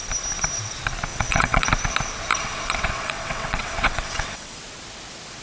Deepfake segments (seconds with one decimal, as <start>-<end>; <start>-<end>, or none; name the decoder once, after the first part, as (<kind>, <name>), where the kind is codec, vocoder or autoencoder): 1.1-1.7 (vocoder, WaveNeXt); 2.3-4.6